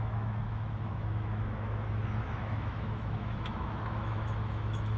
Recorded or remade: remade